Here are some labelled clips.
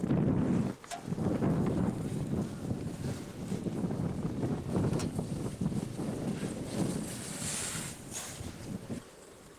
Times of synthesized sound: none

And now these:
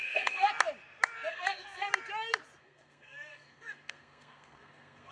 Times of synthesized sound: 0.0-0.5 (codec, SNAC); 1.3-1.9; 2.6-5.1

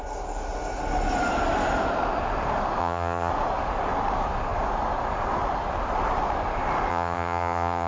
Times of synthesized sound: 2.8-3.3 (vocoder, HiFi-GAN); 6.9-7.9

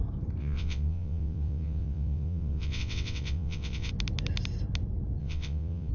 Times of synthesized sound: 0.4-3.9 (vocoder, WaveNeXt); 5.2-5.9

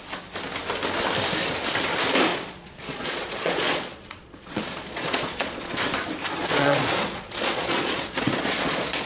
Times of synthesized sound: 2.3-5.8 (vocoder, Vocos); 6.4-9.1